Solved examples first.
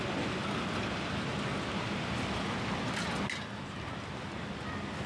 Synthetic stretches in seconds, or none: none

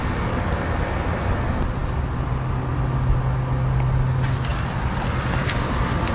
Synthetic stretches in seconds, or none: 4.5-5.5 (vocoder, BigVGAN v2)

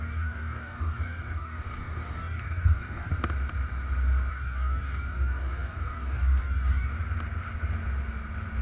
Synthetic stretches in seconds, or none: 0.0-3.1 (codec, DAC); 4.3-6.9

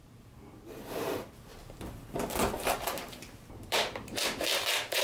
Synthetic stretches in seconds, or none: 0.0-1.5 (vocoder, BigVGAN v2); 2.3-5.0

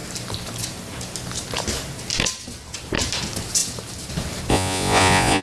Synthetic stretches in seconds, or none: 4.5-5.4 (vocoder, Vocos)